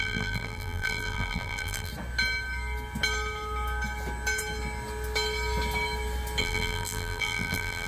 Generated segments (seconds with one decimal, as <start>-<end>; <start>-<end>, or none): 0.0-1.9; 6.4-7.9